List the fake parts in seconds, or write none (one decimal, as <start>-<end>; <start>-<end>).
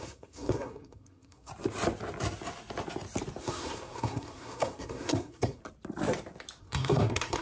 0.0-1.5; 3.4-5.6; 6.6-7.4